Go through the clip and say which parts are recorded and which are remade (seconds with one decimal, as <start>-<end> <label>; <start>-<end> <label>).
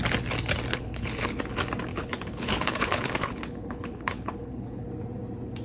0.0-0.7 recorded; 0.7-1.4 remade; 1.4-1.9 recorded; 1.9-4.9 remade; 4.9-5.6 recorded